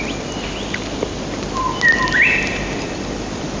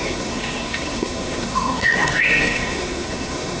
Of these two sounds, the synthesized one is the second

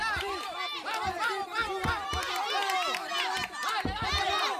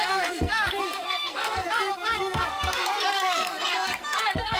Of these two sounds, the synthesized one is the second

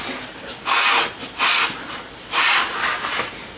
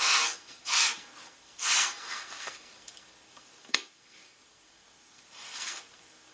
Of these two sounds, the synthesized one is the second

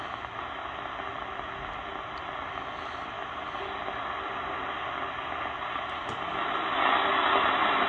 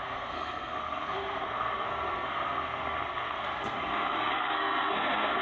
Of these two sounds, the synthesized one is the second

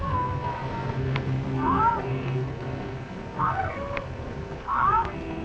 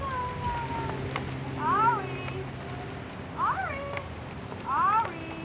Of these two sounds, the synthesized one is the first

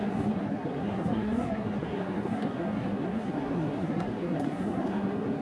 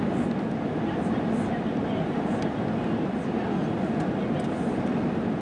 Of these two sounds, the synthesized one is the first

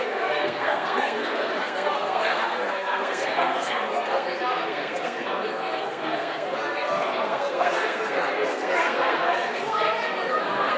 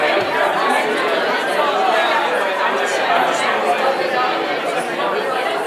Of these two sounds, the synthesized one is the first